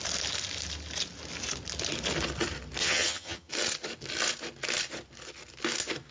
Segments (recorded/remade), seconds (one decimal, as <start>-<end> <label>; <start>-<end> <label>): 0.0-2.8 recorded; 2.8-3.5 remade; 3.5-6.1 recorded